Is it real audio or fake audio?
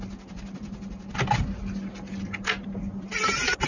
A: real